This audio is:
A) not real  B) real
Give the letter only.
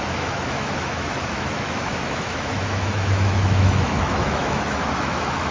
A